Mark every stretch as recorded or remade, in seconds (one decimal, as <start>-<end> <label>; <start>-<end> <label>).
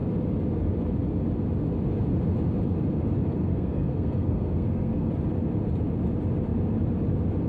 0.0-3.4 recorded; 3.4-5.1 remade; 5.1-7.5 recorded